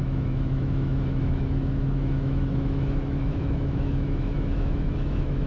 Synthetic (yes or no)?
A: yes